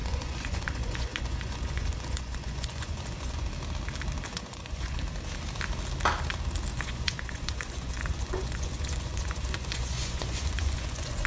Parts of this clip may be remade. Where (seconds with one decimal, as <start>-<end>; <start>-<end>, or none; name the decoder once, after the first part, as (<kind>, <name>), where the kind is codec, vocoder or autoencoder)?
0.0-3.5 (vocoder, Vocos); 4.3-5.0; 6.7-11.3